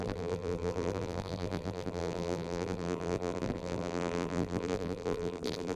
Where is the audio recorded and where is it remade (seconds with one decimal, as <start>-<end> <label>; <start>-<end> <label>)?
0.0-5.8 remade